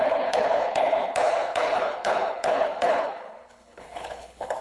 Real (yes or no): no